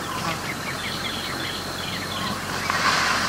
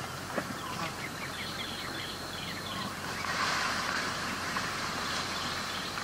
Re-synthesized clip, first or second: second